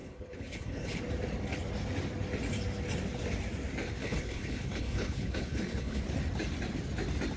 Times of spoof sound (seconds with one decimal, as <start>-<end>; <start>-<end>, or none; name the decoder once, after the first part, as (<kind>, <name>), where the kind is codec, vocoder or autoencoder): 0.0-1.0 (codec, HILCodec); 4.0-6.0